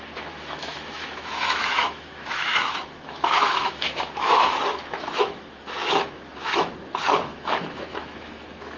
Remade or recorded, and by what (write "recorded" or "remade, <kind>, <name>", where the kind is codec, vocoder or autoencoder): remade, autoencoder, DAC-VAE